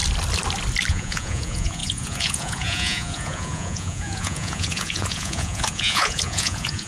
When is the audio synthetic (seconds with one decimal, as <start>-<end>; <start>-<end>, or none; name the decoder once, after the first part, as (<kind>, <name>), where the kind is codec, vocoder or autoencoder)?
0.9-6.9 (vocoder, Vocos)